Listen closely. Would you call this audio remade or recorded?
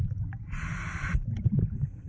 recorded